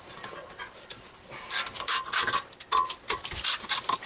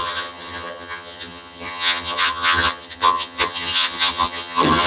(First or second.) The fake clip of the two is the second